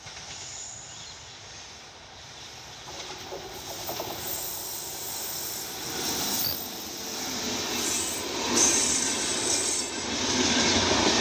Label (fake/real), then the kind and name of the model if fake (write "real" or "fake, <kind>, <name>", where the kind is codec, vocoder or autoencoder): real